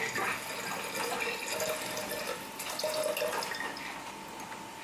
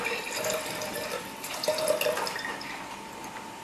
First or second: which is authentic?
first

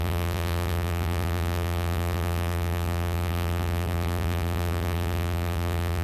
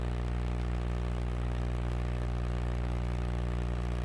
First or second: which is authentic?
second